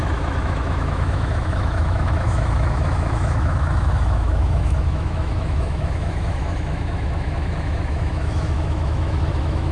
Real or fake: fake